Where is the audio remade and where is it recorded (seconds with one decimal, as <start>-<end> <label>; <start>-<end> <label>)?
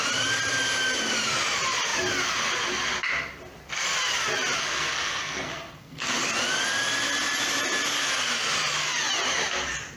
0.0-4.6 recorded; 4.6-6.1 remade; 6.1-10.0 recorded